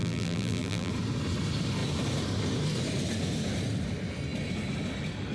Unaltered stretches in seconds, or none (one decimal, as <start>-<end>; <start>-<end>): 0.9-5.3